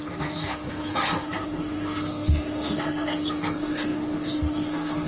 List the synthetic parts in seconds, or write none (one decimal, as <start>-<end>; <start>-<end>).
0.0-5.1